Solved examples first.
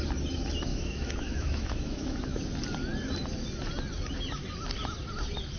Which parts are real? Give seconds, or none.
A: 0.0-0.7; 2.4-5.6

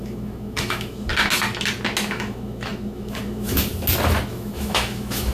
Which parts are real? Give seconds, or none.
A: 1.1-2.1; 3.7-4.3

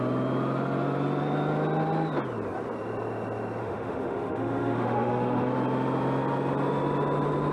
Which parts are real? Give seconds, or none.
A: 0.0-3.6; 5.5-7.5

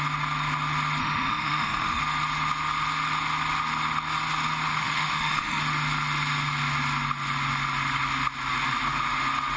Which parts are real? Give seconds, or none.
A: 0.0-1.0; 2.0-4.7; 5.6-9.6

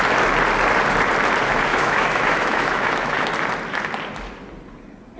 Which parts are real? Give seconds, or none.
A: 0.0-1.7; 3.3-5.2

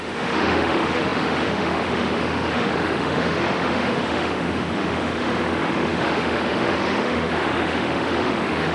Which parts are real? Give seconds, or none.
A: none

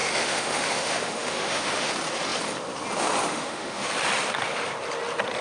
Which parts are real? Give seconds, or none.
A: 1.9-3.3; 3.9-5.4